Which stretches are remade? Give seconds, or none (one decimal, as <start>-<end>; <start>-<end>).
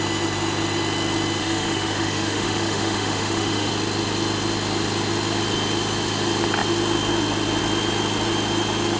1.4-3.7